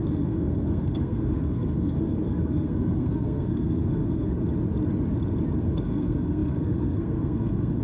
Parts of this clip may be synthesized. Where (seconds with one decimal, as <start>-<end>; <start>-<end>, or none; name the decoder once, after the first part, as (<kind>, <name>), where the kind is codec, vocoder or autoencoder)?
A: 0.0-4.3 (codec, SNAC); 5.6-7.8